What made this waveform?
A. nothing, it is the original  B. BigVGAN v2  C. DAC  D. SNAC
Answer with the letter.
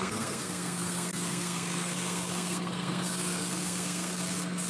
D